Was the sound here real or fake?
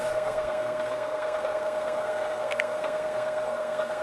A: fake